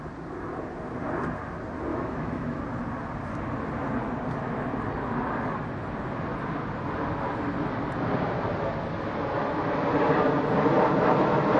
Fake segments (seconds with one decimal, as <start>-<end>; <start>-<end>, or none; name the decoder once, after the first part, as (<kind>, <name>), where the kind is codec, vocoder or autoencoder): 1.9-2.6 (autoencoder, DAC-VAE)